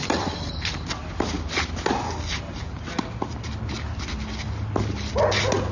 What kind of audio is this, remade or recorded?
recorded